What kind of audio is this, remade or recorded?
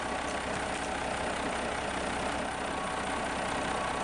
recorded